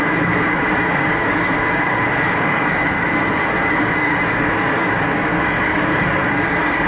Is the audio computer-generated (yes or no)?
yes